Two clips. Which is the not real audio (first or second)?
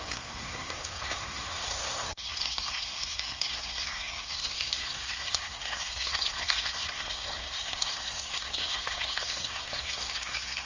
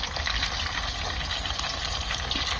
first